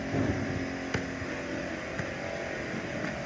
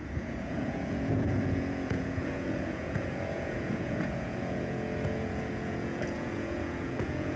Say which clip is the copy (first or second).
second